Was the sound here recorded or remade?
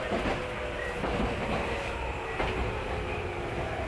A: recorded